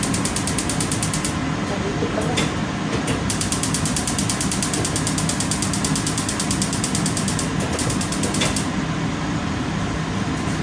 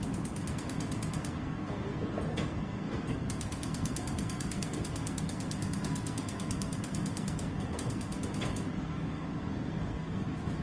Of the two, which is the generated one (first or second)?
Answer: second